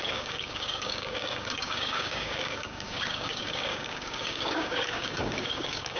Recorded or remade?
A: remade